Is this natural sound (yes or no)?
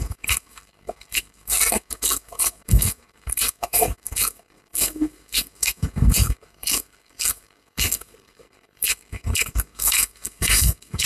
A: no